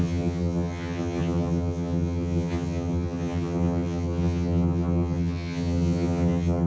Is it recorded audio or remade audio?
remade